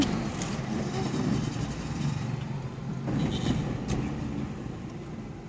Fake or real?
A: real